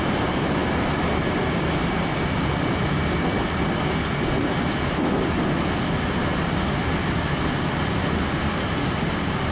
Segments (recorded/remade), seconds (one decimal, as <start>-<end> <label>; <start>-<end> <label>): 0.0-9.5 recorded